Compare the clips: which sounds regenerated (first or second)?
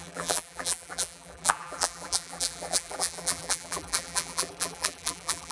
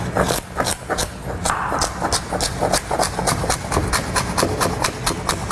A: first